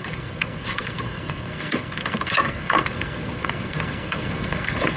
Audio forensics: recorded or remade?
remade